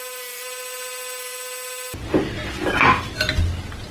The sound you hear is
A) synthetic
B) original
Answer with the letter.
B